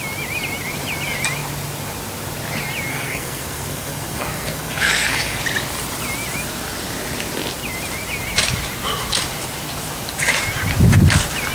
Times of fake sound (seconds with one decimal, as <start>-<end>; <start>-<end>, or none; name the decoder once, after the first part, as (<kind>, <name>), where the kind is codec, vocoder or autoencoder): 2.9-5.4 (codec, SNAC)